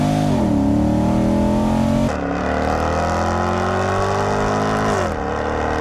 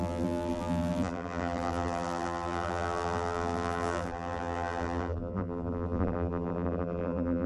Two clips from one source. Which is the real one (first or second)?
first